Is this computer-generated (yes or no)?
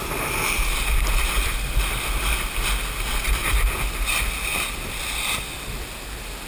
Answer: no